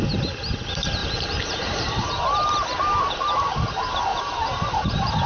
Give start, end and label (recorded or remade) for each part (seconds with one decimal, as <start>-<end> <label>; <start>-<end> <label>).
0.0-1.0 recorded; 1.0-2.2 remade; 2.2-4.1 recorded; 4.1-5.3 remade